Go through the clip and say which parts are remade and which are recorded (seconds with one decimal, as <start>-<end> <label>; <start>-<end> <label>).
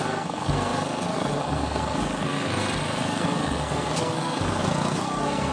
0.0-5.5 remade